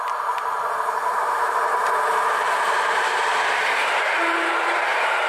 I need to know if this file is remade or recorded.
remade